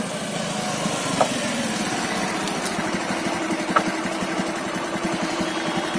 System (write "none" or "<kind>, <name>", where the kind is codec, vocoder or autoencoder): none